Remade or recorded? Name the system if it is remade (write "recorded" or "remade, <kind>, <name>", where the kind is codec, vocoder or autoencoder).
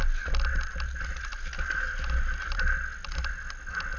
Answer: recorded